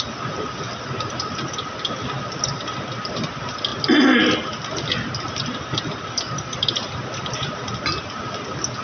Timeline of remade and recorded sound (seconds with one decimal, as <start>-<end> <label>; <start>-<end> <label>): 0.0-8.8 recorded